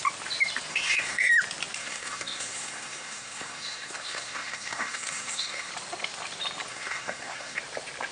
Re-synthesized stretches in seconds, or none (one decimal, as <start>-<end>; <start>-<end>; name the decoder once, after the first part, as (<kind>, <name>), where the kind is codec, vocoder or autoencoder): 0.7-1.3 (codec, SNAC); 1.8-5.7; 6.7-7.6